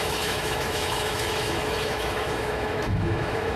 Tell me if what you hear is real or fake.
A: fake